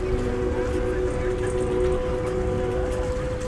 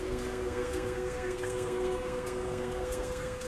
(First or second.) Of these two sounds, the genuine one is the first